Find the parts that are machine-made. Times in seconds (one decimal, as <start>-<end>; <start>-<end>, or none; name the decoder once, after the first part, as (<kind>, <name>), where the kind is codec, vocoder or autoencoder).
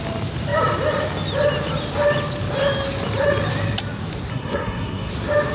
4.3-5.1 (codec, SNAC)